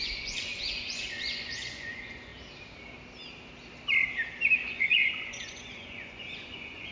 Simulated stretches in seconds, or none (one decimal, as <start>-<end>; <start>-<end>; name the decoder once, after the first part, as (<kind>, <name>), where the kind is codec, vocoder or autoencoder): 0.0-2.3 (vocoder, Vocos); 4.7-6.9